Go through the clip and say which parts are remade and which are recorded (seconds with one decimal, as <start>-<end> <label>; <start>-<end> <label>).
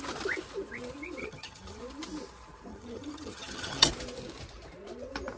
0.0-1.2 recorded; 1.2-1.8 remade; 1.8-2.7 recorded; 2.7-3.9 remade; 3.9-5.4 recorded